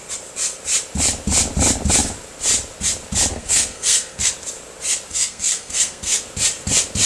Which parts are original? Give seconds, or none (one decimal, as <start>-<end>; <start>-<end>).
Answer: 0.0-3.3; 4.3-5.1; 6.2-7.1